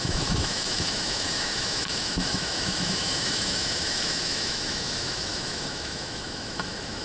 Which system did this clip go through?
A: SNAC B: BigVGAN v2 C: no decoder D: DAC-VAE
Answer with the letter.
D